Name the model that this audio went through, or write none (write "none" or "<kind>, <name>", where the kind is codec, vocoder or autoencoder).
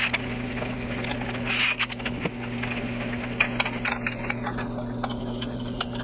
none